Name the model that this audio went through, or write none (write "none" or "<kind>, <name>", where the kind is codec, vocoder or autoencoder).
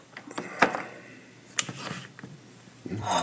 vocoder, BigVGAN v2